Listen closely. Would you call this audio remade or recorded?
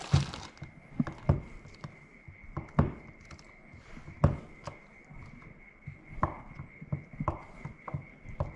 recorded